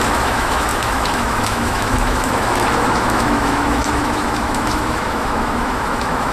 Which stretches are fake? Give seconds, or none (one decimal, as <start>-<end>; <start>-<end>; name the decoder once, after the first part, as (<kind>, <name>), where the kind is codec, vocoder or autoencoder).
0.0-6.3 (autoencoder, DAC-VAE)